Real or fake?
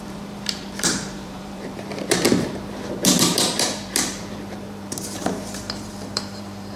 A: fake